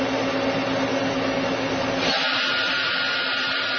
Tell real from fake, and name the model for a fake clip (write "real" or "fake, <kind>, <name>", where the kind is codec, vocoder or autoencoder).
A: real